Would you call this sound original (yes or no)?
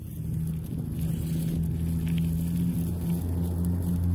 yes